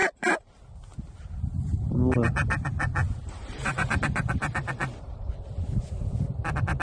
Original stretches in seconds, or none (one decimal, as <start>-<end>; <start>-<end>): 0.0-3.3